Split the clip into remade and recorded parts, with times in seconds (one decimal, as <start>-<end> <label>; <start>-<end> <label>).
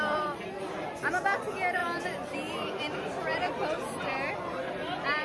0.0-5.2 recorded